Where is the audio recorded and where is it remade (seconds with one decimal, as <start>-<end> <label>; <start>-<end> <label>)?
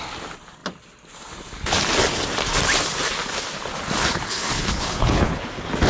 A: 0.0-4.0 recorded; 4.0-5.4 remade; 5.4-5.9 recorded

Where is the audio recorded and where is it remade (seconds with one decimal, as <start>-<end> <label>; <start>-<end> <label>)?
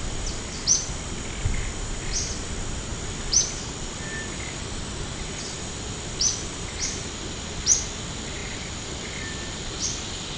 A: 0.0-2.9 recorded; 2.9-7.8 remade; 7.8-8.4 recorded; 8.4-10.4 remade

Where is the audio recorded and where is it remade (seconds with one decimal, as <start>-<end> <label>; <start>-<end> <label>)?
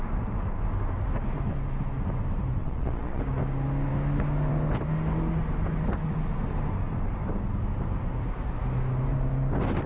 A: 0.0-2.6 recorded; 2.6-3.2 remade; 3.2-9.9 recorded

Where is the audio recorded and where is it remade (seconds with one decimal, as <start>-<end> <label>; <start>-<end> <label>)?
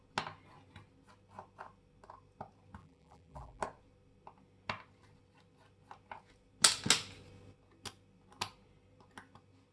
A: 0.0-2.8 recorded; 2.8-3.6 remade; 3.6-9.7 recorded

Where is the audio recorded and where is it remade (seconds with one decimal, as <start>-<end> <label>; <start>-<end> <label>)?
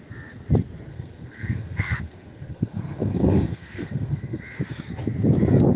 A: 0.0-0.9 recorded; 0.9-4.4 remade; 4.4-5.8 recorded